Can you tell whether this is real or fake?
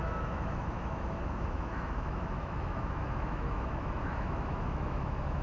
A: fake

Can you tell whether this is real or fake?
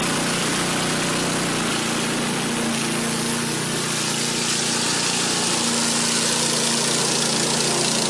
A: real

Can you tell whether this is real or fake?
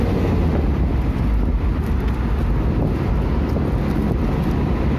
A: real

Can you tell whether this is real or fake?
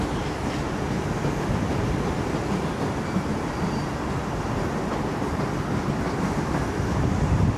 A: real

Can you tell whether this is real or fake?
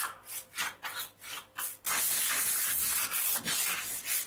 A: real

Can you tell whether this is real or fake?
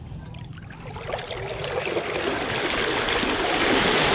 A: real